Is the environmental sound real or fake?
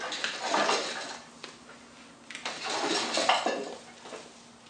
real